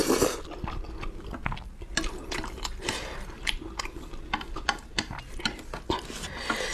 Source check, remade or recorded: recorded